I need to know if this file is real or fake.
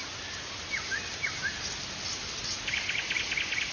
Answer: real